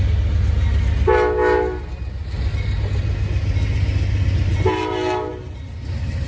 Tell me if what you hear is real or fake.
real